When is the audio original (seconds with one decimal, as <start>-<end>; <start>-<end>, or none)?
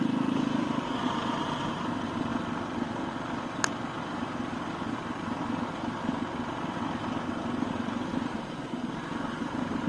2.3-4.9; 5.4-7.4